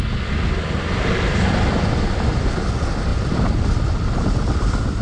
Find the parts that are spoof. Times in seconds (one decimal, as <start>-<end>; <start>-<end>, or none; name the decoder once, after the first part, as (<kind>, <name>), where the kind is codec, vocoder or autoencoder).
none